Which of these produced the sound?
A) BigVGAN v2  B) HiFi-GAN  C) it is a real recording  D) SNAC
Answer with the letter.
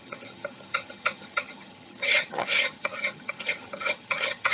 B